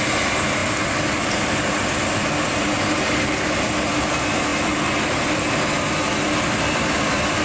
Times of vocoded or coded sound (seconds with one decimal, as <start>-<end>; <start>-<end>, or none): none

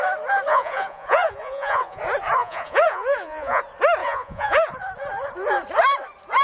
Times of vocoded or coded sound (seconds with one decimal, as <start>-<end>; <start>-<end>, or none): 0.5-2.0; 2.4-3.6; 4.0-4.7

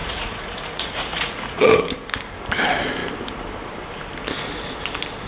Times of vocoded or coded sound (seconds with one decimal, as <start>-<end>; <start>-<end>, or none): 0.0-1.8

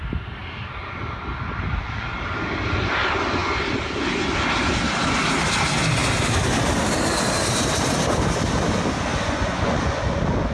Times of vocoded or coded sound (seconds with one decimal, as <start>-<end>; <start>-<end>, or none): 9.1-10.0

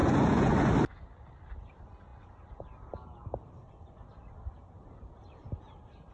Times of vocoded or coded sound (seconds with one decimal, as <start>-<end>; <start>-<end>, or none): 0.0-0.7

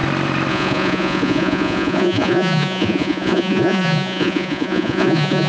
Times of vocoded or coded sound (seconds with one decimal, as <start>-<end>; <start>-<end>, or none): 0.5-5.5

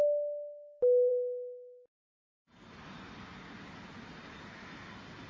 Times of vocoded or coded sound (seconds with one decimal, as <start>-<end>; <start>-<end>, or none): none